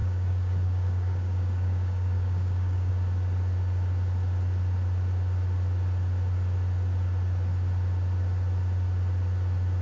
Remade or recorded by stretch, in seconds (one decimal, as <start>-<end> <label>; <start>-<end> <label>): 0.0-2.9 remade; 2.9-9.8 recorded

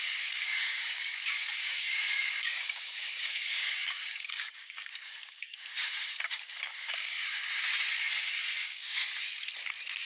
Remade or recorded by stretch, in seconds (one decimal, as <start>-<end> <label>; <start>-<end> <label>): 0.0-7.4 remade; 7.4-8.6 recorded; 8.6-9.0 remade; 9.0-10.0 recorded

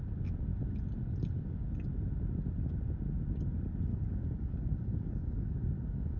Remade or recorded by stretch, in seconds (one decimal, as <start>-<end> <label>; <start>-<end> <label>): 0.0-3.9 recorded; 3.9-6.2 remade

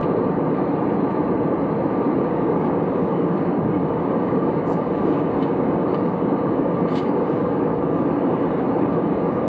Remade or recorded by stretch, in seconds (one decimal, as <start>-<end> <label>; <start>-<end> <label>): 0.0-2.2 recorded; 2.2-9.5 remade

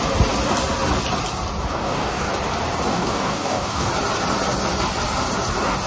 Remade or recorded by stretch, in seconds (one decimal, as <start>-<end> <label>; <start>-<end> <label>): 0.0-1.7 recorded; 1.7-2.3 remade; 2.3-2.9 recorded; 2.9-3.9 remade; 3.9-5.9 recorded

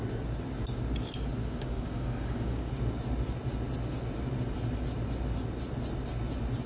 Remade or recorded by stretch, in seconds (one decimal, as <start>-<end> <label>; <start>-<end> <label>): 0.0-1.4 recorded; 1.4-2.7 remade; 2.7-6.7 recorded

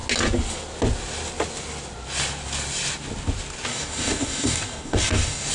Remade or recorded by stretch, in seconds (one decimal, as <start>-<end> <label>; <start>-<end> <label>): 0.0-3.7 recorded; 3.7-5.5 remade

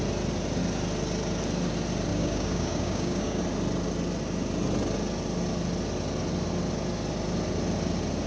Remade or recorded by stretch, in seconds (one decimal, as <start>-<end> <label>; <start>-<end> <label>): 0.0-2.1 recorded; 2.1-3.4 remade; 3.4-8.3 recorded